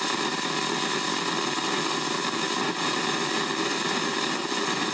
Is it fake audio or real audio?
real